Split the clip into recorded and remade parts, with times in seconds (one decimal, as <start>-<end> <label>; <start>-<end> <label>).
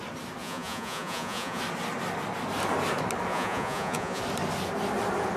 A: 0.0-0.4 recorded; 0.4-1.6 remade; 1.6-3.3 recorded; 3.3-4.2 remade; 4.2-5.4 recorded